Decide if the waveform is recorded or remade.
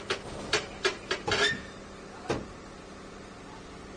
recorded